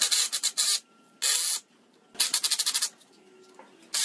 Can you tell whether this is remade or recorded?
recorded